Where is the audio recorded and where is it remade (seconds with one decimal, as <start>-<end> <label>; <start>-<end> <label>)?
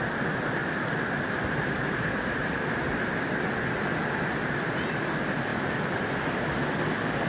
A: 0.0-7.3 recorded